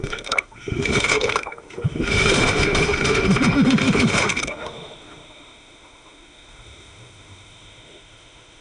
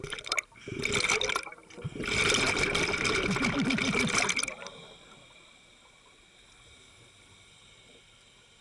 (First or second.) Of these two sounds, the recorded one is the second